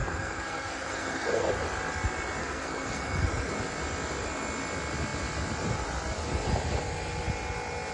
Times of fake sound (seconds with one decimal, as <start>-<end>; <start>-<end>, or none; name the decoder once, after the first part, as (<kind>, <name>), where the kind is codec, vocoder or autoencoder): 0.0-1.5 (codec, SNAC); 2.4-3.5